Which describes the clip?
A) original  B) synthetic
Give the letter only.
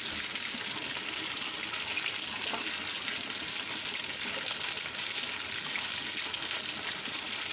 A